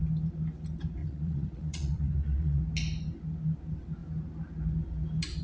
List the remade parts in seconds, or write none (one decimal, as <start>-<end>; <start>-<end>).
1.0-2.6